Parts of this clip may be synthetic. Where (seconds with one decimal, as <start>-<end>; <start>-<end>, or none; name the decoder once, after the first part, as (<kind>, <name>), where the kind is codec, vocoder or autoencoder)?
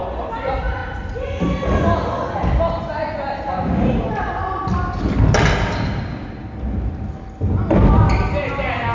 none